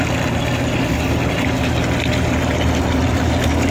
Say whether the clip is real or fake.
real